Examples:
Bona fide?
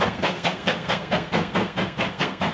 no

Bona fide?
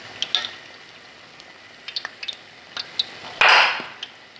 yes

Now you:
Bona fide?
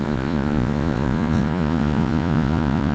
no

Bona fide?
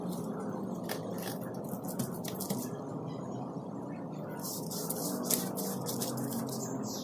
yes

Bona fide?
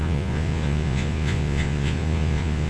no